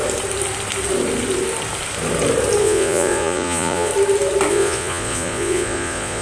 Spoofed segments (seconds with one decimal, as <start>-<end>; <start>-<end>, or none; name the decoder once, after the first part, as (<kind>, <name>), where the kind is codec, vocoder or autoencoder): 2.6-3.9 (vocoder, Vocos); 4.5-6.2

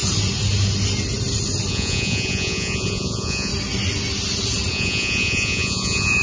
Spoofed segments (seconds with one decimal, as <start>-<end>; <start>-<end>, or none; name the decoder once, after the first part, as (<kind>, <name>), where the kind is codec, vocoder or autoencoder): 1.7-3.5 (vocoder, Vocos); 4.7-6.2

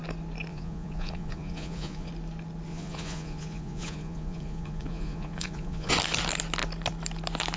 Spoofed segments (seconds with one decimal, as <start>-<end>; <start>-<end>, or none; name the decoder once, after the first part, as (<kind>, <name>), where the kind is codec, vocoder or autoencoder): 0.5-2.1 (vocoder, Vocos); 2.7-5.9

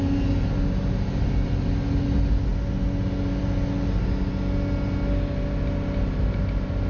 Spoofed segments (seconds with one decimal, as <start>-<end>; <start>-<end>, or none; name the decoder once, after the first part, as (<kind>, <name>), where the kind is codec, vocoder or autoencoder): none

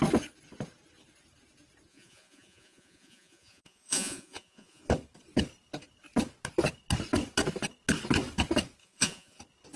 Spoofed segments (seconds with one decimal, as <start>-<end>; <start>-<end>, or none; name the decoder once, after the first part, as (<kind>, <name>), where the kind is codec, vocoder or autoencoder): 1.9-4.8 (vocoder, Vocos); 8.8-9.4